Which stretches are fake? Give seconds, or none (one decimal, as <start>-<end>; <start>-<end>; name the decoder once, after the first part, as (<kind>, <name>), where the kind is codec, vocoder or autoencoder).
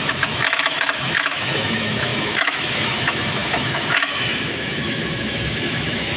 0.0-6.2 (autoencoder, DAC-VAE)